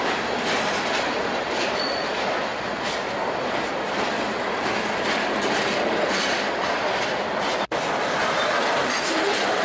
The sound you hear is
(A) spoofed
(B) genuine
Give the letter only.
B